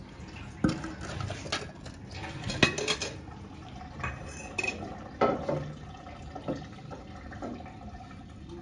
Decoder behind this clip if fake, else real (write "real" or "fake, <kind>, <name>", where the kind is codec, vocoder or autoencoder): real